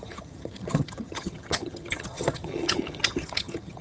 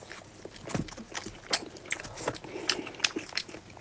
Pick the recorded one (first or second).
second